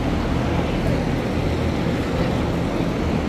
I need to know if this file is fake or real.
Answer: real